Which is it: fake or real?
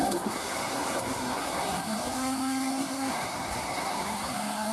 fake